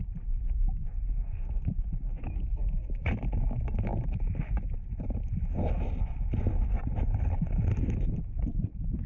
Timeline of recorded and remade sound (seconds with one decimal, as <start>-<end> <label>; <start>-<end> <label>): 0.0-9.1 recorded

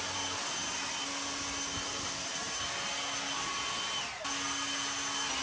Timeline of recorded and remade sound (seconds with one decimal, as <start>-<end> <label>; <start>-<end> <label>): 0.0-5.4 recorded

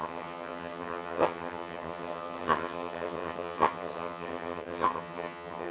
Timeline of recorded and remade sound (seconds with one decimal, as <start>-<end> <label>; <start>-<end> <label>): 0.0-5.7 remade

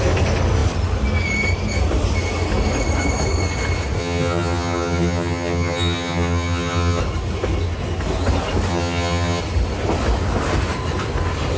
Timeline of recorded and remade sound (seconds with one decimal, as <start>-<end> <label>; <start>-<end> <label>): 0.0-4.0 recorded; 4.0-7.0 remade; 7.0-8.7 recorded; 8.7-9.4 remade; 9.4-11.6 recorded

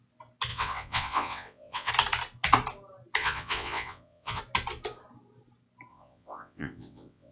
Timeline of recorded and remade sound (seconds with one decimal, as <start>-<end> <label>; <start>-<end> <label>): 0.0-0.5 recorded; 0.5-1.9 remade; 1.9-3.2 recorded; 3.2-4.4 remade; 4.4-5.9 recorded; 5.9-7.3 remade

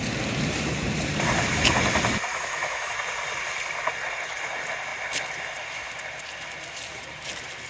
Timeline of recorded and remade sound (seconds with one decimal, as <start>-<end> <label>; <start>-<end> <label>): 0.0-2.3 recorded; 2.3-2.9 remade; 2.9-7.7 recorded